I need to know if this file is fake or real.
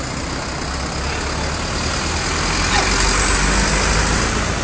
real